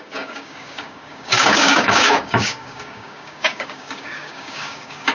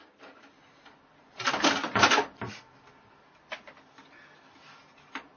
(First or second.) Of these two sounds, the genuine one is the second